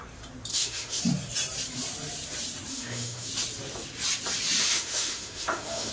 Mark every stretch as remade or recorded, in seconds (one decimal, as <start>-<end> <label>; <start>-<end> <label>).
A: 0.0-0.5 recorded; 0.5-1.0 remade; 1.0-2.7 recorded; 2.7-3.3 remade; 3.3-4.6 recorded; 4.6-5.9 remade